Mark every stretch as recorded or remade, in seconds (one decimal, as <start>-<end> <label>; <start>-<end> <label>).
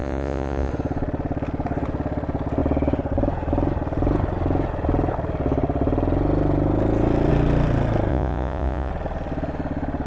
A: 0.0-0.7 remade; 0.7-8.1 recorded; 8.1-8.9 remade; 8.9-10.1 recorded